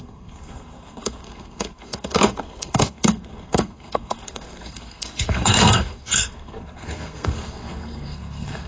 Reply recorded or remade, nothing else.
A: remade